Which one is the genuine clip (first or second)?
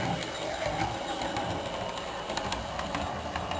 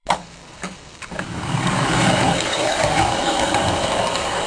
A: first